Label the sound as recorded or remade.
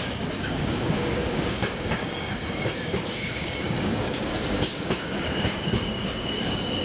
remade